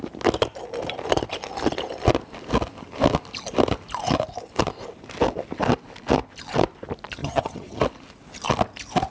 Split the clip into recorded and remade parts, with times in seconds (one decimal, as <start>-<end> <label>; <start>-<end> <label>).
0.0-7.2 recorded; 7.2-7.8 remade; 7.8-9.1 recorded